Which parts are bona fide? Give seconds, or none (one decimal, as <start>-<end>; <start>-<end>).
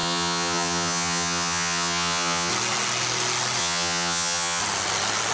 2.5-3.6; 4.6-5.3